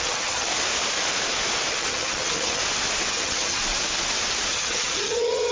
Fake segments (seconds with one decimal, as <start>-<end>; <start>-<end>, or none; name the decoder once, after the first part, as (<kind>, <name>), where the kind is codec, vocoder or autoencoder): 0.0-0.5 (vocoder, HiFi-GAN); 1.7-2.6; 3.1-3.6; 4.5-5.5